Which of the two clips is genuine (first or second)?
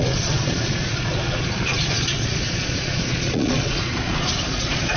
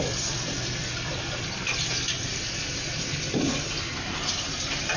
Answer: second